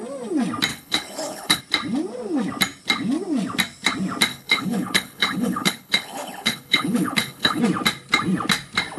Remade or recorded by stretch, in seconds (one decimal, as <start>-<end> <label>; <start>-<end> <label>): 0.0-0.7 recorded; 0.7-1.6 remade; 1.6-4.3 recorded; 4.3-7.6 remade; 7.6-9.0 recorded